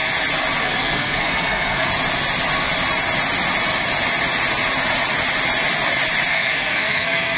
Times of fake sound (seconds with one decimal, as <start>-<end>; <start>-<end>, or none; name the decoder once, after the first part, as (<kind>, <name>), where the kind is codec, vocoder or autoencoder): 0.6-1.9 (codec, SNAC); 6.3-7.4